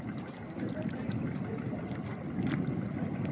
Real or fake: real